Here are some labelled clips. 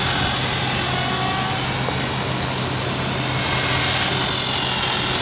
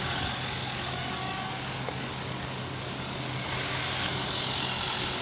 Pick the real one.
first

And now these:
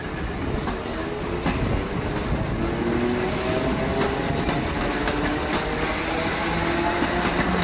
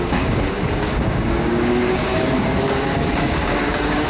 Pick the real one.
first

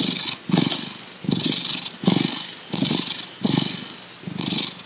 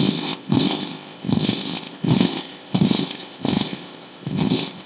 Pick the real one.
first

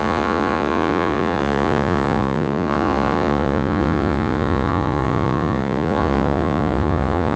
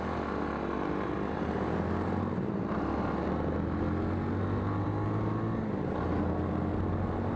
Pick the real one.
second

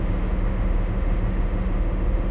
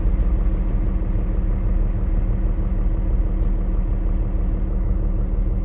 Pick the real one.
second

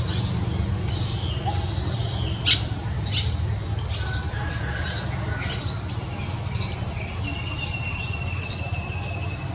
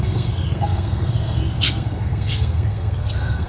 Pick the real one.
first